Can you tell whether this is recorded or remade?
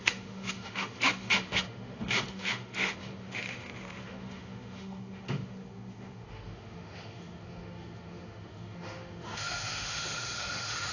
remade